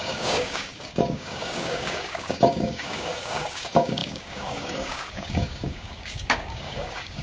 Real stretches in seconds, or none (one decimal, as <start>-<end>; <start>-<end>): none

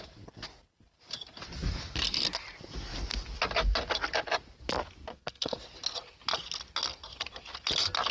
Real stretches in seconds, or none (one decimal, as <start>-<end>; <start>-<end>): 0.0-5.1; 5.6-8.1

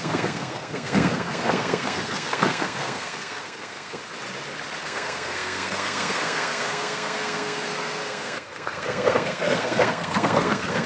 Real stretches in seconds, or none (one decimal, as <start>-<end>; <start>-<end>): 4.0-4.8

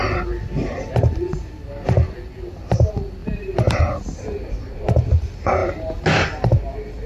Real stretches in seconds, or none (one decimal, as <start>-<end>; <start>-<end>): 0.0-3.2; 3.8-7.1

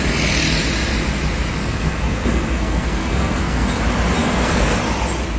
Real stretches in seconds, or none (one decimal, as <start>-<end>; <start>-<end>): 0.0-1.6; 3.8-4.2; 4.8-5.4

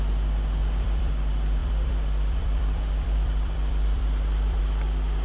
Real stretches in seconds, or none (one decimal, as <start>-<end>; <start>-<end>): 0.0-0.6; 1.1-1.6; 4.6-5.2